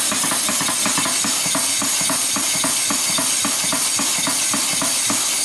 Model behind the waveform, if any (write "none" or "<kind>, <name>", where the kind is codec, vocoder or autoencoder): none